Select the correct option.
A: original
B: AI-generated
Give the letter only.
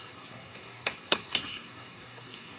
B